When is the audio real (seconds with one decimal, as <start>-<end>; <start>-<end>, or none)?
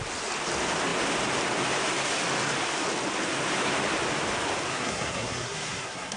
0.0-4.7